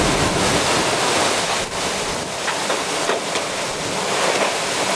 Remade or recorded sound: recorded